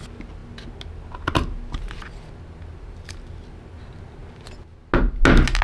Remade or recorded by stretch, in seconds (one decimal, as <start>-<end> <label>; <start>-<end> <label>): 0.0-5.6 recorded